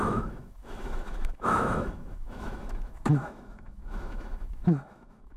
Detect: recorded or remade remade